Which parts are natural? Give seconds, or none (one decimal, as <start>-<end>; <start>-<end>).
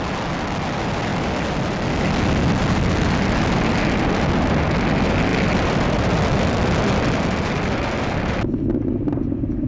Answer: 0.0-9.7